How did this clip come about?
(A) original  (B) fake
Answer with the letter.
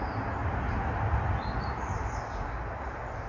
A